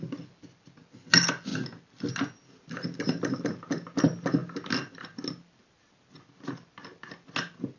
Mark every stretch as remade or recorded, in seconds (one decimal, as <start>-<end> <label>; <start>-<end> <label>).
0.0-7.8 recorded